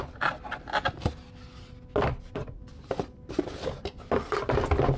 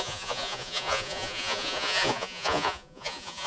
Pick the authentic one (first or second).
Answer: first